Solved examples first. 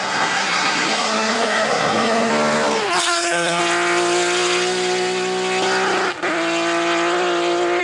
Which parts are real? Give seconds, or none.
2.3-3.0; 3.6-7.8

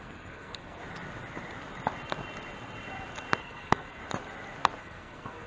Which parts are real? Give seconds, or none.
0.8-3.4; 4.0-4.8

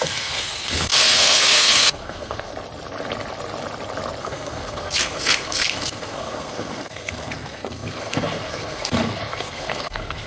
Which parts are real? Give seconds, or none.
2.5-4.2

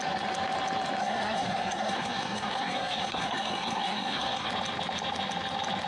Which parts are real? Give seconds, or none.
0.0-1.0; 4.5-5.9

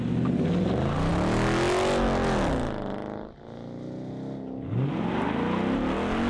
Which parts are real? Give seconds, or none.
0.0-6.3

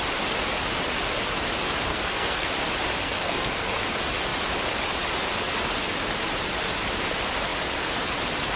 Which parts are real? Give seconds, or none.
0.0-1.9; 2.5-3.0; 3.8-8.6